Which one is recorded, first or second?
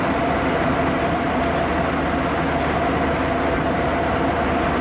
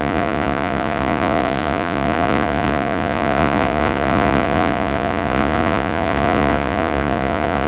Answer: first